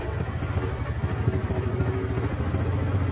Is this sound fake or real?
real